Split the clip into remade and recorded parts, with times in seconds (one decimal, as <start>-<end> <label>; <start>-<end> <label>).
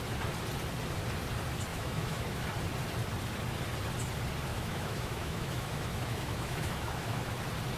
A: 0.0-1.7 recorded; 1.7-2.4 remade; 2.4-4.5 recorded; 4.5-7.3 remade; 7.3-7.8 recorded